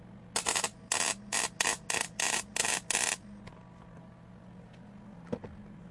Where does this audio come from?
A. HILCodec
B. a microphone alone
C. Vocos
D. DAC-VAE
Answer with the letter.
B